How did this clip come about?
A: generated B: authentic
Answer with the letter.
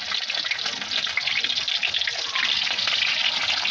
B